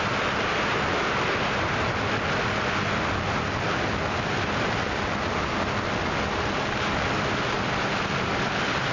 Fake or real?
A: real